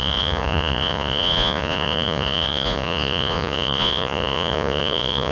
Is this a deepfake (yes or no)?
yes